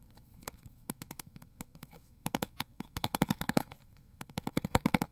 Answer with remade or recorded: remade